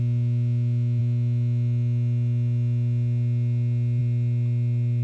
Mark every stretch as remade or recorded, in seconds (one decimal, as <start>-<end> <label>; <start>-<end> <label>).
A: 0.0-5.0 recorded